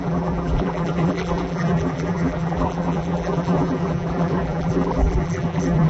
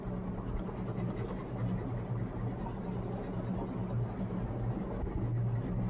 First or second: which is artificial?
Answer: first